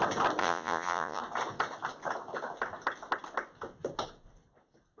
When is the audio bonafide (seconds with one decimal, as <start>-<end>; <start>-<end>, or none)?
0.0-0.4; 1.2-5.0